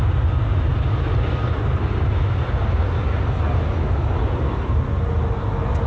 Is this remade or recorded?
recorded